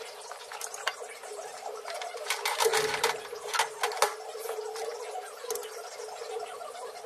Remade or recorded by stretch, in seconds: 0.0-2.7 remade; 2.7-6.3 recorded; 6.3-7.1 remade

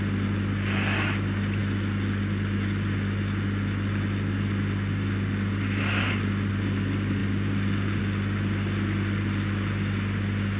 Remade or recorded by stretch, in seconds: 0.0-10.6 recorded

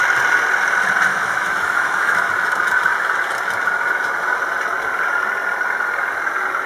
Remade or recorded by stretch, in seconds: 0.0-1.1 recorded; 1.1-2.3 remade; 2.3-6.7 recorded

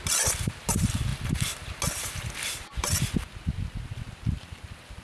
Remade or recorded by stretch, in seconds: 0.0-5.0 recorded

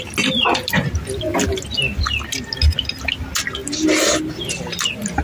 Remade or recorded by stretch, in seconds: 0.0-5.2 recorded

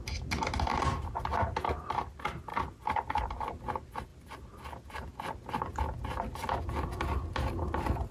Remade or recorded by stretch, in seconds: 0.0-8.1 recorded